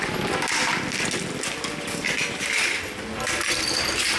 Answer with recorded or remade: recorded